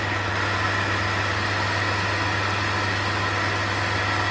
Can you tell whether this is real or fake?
real